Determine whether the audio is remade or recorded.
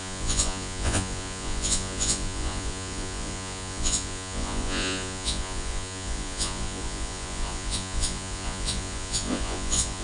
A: remade